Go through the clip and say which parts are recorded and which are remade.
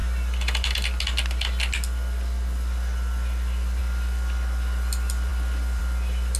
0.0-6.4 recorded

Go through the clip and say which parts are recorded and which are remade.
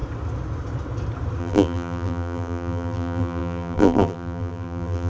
0.0-1.4 recorded; 1.4-5.1 remade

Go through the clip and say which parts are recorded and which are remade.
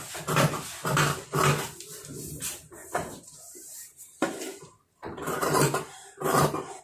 0.0-2.8 recorded; 2.8-6.8 remade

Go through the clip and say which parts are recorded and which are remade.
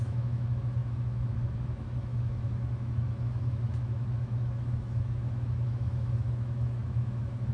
0.0-7.5 remade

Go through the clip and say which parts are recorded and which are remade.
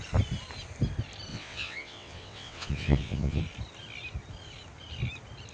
0.0-1.3 recorded; 1.3-3.4 remade; 3.4-5.5 recorded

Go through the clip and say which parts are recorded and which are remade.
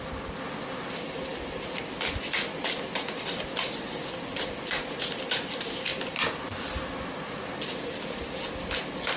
0.0-9.2 recorded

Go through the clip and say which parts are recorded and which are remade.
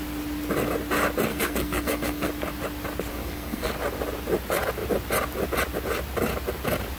0.0-1.3 recorded; 1.3-2.3 remade; 2.3-3.1 recorded; 3.1-3.7 remade; 3.7-7.0 recorded